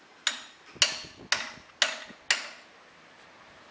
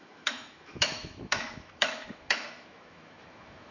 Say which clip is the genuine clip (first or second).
first